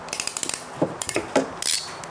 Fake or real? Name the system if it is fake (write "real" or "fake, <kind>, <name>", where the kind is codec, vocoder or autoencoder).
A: real